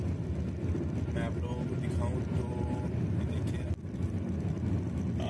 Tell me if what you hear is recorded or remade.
recorded